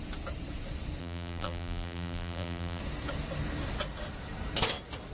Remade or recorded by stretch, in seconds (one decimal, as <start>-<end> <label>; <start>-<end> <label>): 0.0-1.0 recorded; 1.0-2.8 remade; 2.8-5.1 recorded